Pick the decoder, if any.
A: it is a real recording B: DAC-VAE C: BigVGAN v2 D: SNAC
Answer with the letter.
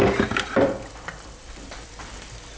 C